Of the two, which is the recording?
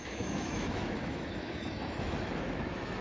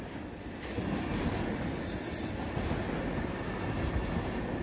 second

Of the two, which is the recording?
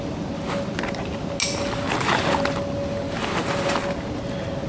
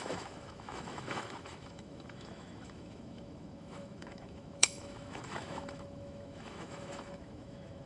first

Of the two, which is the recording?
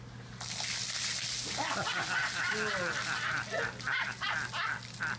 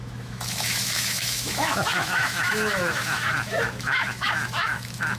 first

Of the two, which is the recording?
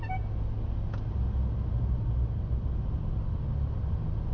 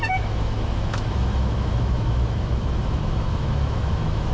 first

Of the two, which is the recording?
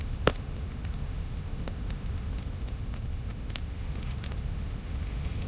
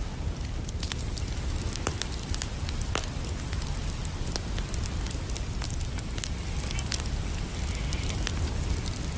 second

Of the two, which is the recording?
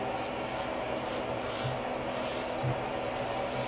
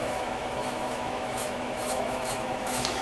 first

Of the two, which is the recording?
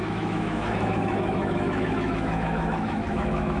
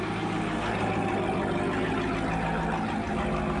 second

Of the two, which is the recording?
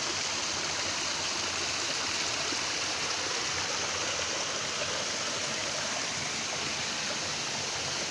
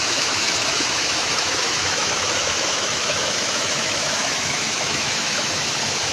first